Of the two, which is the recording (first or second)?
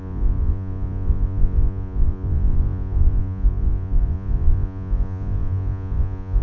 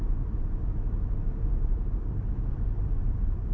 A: second